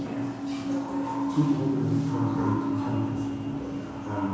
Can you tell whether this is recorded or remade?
recorded